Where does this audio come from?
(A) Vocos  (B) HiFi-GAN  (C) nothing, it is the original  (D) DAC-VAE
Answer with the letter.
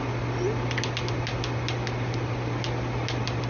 C